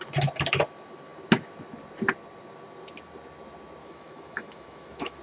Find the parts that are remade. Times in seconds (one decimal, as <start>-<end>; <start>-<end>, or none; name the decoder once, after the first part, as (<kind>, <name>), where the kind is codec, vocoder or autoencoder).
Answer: 3.8-5.2 (autoencoder, DAC-VAE)